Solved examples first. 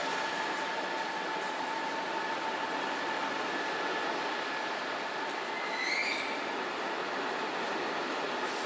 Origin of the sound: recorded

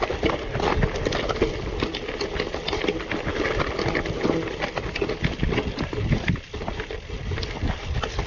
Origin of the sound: recorded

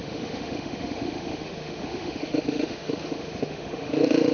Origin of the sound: remade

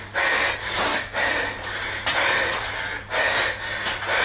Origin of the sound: recorded